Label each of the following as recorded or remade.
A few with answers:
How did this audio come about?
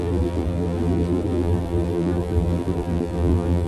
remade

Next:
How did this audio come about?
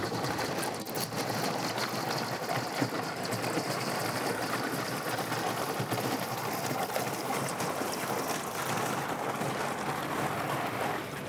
recorded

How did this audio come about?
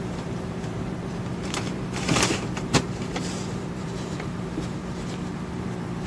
remade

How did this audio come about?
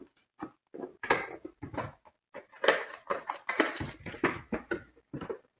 remade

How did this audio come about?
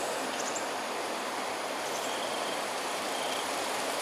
remade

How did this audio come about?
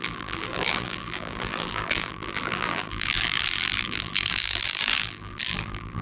remade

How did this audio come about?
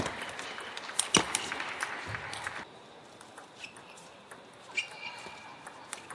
recorded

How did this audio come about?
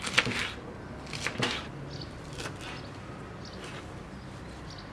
recorded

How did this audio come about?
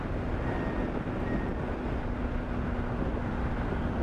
recorded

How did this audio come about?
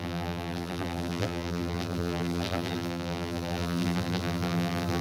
remade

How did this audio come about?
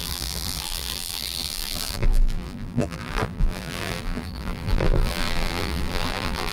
remade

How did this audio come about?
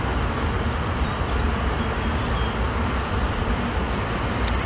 remade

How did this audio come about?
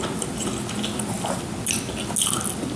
recorded